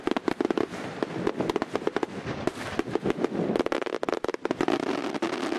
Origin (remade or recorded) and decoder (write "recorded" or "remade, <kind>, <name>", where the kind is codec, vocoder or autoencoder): recorded